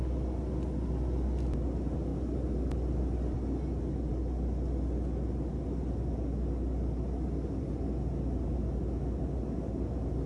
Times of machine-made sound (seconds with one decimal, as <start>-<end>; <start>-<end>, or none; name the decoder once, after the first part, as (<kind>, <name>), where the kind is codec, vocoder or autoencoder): none